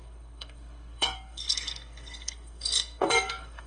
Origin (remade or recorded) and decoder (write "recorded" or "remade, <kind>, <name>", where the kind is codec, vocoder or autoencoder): remade, codec, SNAC